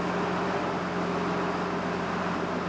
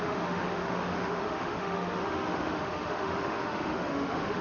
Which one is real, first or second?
first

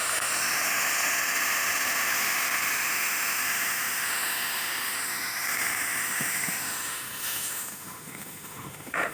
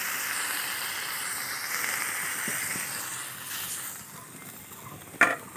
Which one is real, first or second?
second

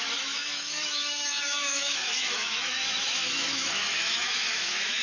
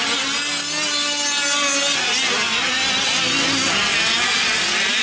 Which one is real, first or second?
second